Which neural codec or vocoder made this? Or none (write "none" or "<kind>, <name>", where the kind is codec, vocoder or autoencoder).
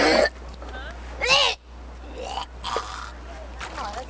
none